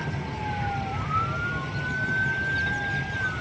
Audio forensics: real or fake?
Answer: real